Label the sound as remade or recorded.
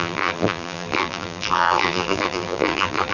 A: remade